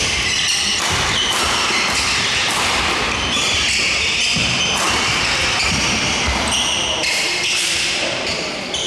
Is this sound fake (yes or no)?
no